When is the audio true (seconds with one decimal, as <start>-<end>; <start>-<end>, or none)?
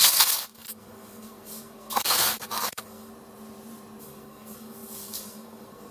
3.1-4.0